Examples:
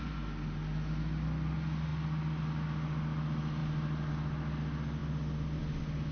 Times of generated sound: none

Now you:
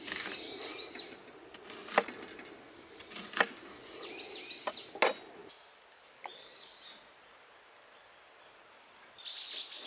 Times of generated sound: none

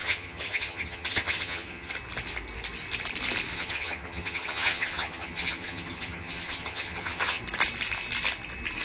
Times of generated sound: 0.0-1.9 (vocoder, HiFi-GAN); 3.5-7.4